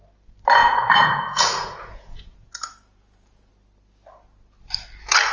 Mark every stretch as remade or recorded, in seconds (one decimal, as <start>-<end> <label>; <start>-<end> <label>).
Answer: 0.0-0.6 recorded; 0.6-3.5 remade; 3.5-5.3 recorded